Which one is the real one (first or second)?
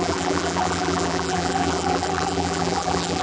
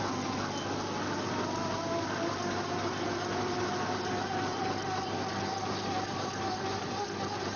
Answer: second